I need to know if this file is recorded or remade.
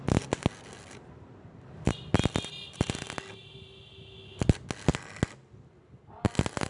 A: recorded